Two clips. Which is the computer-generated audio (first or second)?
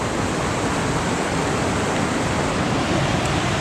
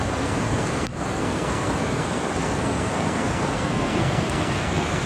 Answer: second